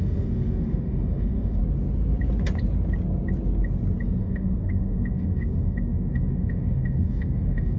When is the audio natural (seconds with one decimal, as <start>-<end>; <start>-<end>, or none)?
1.6-4.2